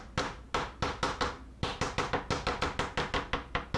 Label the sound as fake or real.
real